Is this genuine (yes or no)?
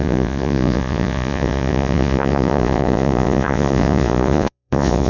no